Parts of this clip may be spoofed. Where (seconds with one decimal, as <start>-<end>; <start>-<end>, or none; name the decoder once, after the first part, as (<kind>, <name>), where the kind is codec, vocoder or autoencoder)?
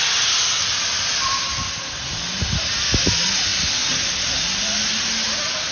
none